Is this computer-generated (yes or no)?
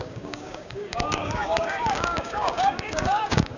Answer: yes